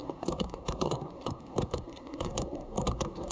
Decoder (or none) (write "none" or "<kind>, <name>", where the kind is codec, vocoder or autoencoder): codec, SNAC